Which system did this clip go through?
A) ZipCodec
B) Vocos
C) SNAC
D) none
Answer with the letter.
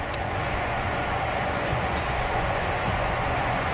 B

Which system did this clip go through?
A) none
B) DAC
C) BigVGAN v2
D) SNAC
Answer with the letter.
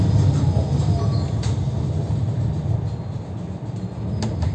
A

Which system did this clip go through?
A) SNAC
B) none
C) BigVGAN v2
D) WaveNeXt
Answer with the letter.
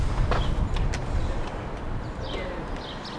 B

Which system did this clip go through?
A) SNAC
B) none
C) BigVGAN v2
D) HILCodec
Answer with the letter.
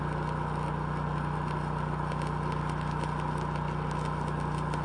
B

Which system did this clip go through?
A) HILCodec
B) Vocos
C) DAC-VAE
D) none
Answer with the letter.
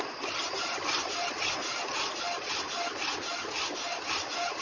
D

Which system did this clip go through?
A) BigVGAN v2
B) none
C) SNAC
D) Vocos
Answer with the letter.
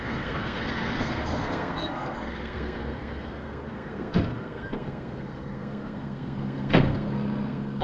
C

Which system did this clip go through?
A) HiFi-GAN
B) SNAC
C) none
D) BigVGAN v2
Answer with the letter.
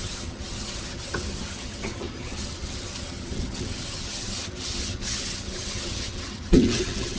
A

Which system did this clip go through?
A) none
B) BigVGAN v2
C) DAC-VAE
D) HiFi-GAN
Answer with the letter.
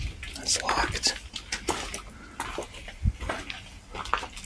A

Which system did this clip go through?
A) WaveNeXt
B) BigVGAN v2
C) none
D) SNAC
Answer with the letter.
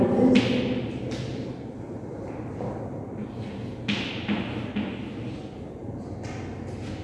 C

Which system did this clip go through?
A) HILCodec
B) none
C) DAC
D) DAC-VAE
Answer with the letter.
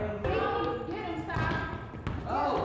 B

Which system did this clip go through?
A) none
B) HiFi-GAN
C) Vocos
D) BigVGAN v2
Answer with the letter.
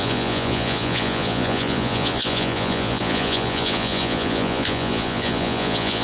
C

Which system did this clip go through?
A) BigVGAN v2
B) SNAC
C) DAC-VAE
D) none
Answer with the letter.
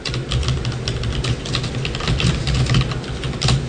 D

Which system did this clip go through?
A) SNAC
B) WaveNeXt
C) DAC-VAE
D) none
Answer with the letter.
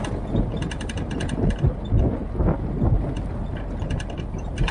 D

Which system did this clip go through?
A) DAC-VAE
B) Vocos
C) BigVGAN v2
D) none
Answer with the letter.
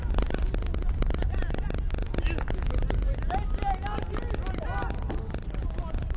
D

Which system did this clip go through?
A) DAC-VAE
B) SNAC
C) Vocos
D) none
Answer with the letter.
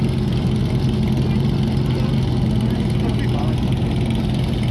D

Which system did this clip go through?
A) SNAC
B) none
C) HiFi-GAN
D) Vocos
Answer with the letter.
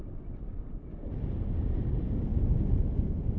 B